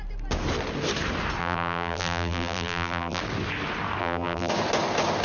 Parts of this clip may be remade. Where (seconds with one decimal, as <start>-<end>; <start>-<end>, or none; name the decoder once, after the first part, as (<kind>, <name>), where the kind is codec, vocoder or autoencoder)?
1.4-3.2 (vocoder, BigVGAN v2); 4.0-4.5